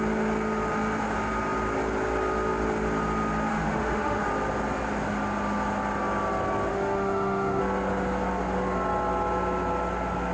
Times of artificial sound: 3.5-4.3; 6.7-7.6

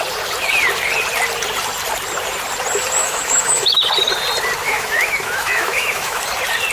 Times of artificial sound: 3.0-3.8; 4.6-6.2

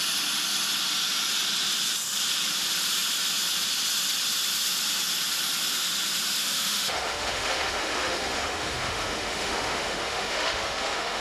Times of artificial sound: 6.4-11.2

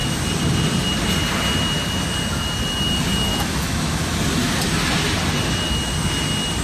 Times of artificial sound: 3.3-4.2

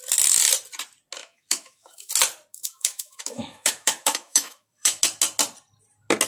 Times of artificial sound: 1.2-2.1; 2.5-5.0

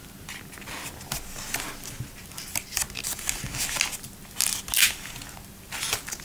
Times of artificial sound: none